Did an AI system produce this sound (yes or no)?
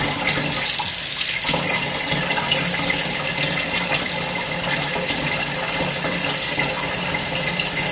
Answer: no